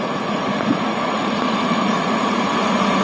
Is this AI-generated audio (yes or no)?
yes